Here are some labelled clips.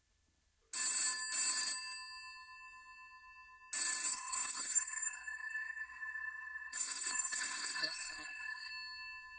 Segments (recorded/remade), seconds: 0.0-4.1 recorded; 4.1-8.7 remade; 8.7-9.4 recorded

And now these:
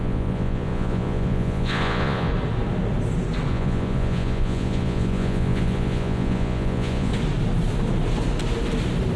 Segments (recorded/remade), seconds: 0.0-2.3 remade; 2.3-3.5 recorded; 3.5-7.1 remade; 7.1-9.2 recorded

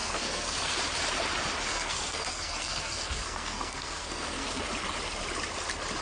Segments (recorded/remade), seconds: 0.0-0.8 remade; 0.8-1.7 recorded; 1.7-4.7 remade; 4.7-6.0 recorded